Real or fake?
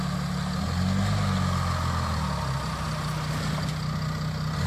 real